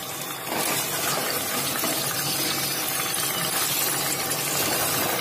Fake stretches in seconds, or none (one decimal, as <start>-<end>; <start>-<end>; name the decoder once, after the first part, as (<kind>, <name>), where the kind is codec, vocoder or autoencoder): none